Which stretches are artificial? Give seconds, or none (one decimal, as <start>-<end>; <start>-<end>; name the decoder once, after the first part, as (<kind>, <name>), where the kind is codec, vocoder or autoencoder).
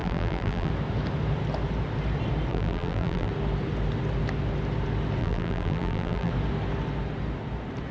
0.0-0.7 (vocoder, BigVGAN v2); 2.5-3.3; 5.2-6.3